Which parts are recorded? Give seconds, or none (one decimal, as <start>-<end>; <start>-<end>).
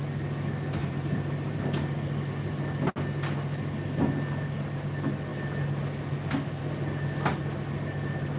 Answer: 0.0-0.8; 1.6-8.4